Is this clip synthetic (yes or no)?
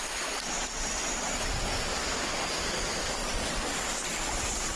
no